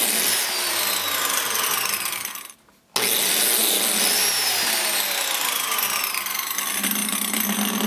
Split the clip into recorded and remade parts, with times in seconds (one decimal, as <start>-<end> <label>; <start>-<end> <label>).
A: 0.0-7.9 recorded